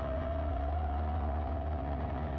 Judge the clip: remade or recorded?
remade